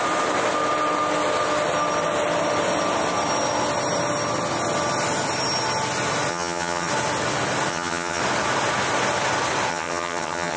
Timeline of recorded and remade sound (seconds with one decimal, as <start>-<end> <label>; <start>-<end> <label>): 0.0-6.3 recorded; 6.3-6.9 remade; 6.9-7.7 recorded; 7.7-8.2 remade; 8.2-9.7 recorded; 9.7-10.6 remade